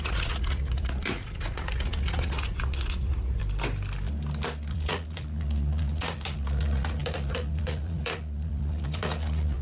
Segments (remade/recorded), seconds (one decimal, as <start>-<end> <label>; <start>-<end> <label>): 0.0-3.4 remade; 3.4-4.7 recorded; 4.7-9.6 remade